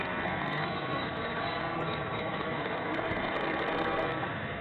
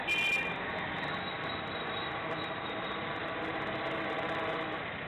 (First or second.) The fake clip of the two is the first